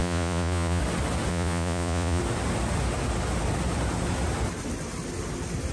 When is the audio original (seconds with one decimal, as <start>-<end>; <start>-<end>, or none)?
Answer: 0.8-1.3; 2.2-5.7